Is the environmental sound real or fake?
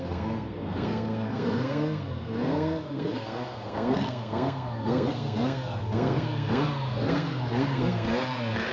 fake